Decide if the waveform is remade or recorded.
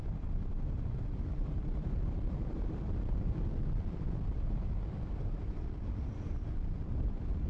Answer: remade